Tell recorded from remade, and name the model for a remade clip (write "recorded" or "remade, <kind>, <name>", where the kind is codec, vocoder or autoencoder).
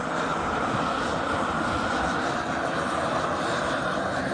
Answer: recorded